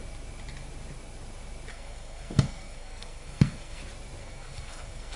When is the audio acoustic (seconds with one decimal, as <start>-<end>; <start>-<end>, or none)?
0.0-1.7; 3.8-4.2

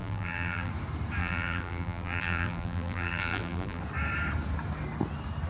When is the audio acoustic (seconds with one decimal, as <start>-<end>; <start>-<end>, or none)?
0.7-1.2; 3.8-5.5

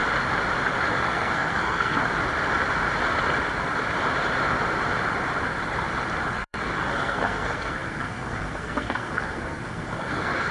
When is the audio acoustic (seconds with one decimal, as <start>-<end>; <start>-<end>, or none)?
0.0-0.9; 2.0-6.3

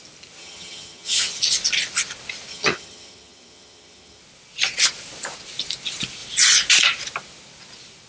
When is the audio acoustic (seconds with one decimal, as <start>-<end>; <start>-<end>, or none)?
0.0-0.4; 1.4-2.5; 4.2-8.1

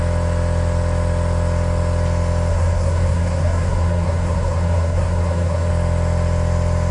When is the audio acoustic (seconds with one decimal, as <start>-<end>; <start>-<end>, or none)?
0.0-2.5; 5.7-6.9

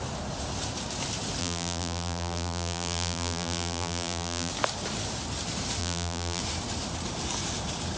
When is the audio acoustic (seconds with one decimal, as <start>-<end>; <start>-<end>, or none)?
0.0-1.4; 4.5-5.8; 6.4-8.0